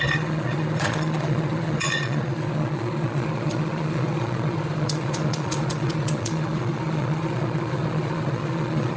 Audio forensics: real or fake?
fake